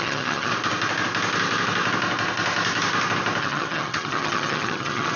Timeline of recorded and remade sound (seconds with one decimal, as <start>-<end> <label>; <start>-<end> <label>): 0.0-0.5 remade; 0.5-3.4 recorded; 3.4-5.2 remade